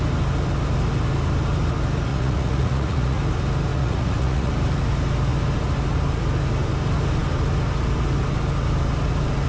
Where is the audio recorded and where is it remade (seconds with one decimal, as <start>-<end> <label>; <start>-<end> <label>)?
0.0-2.1 recorded; 2.1-3.2 remade; 3.2-3.7 recorded; 3.7-4.5 remade; 4.5-9.5 recorded